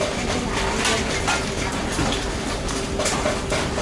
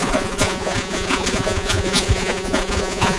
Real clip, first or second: first